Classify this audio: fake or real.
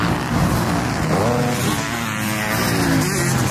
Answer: real